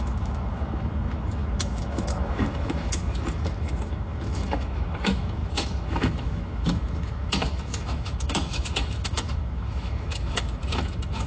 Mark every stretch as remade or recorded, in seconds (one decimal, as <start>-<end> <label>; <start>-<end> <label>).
0.0-11.3 remade